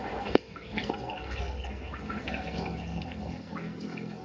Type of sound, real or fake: fake